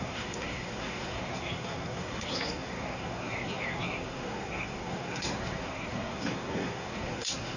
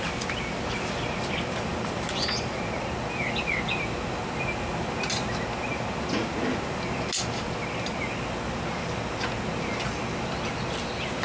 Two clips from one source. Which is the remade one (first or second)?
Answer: first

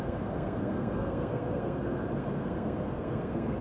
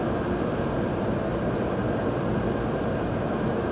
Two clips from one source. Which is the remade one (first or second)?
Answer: first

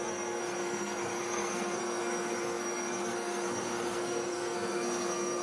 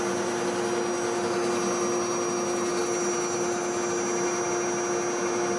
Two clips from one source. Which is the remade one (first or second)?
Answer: first